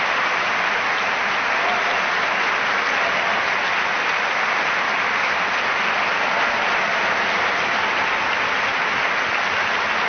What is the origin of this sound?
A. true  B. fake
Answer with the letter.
A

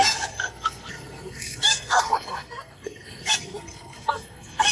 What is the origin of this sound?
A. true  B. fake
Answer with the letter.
B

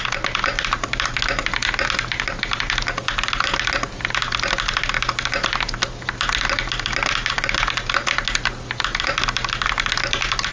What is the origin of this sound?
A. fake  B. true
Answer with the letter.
B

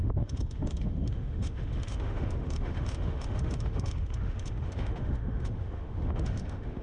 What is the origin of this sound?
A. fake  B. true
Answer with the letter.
A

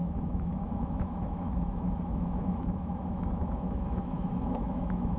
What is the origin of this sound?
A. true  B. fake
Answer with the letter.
B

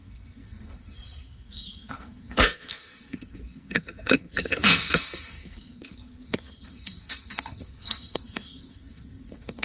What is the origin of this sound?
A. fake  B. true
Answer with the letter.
A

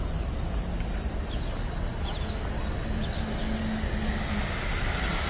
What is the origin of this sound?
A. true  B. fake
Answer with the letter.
A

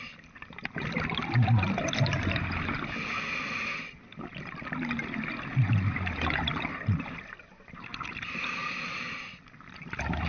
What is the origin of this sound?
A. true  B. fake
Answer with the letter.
A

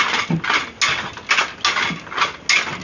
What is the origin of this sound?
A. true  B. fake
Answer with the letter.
A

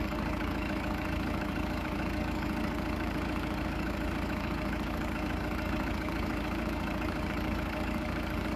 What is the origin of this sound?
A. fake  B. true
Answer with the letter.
A